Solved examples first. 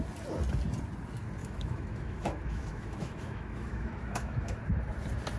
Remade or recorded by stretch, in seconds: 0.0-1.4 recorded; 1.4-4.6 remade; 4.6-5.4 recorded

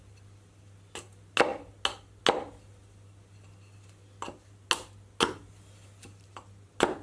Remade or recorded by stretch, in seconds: 0.0-7.0 recorded

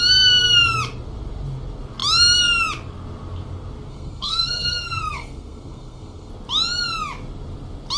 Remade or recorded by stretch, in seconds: 0.0-3.9 recorded; 3.9-6.3 remade; 6.3-8.0 recorded

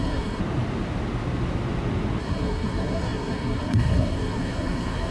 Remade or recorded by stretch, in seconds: 0.0-0.4 remade; 0.4-2.2 recorded; 2.2-5.1 remade

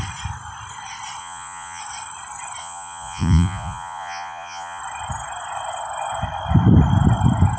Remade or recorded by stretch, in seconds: 0.0-1.2 recorded; 1.2-1.8 remade; 1.8-2.6 recorded; 2.6-4.8 remade; 4.8-7.6 recorded

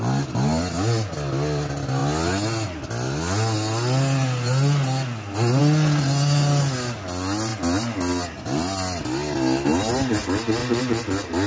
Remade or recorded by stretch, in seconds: 0.0-11.5 recorded

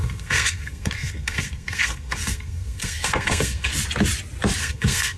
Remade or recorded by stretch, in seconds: 0.0-3.7 remade; 3.7-4.6 recorded; 4.6-5.2 remade

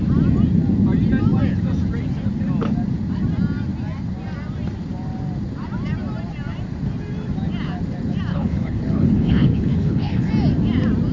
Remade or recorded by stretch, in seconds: 0.0-8.3 recorded; 8.3-10.3 remade; 10.3-11.1 recorded